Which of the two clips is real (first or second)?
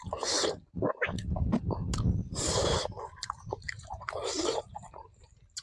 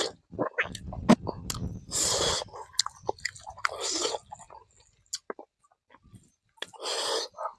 second